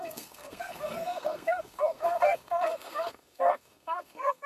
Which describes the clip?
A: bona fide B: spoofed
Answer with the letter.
B